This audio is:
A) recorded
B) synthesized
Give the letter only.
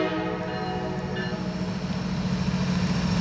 A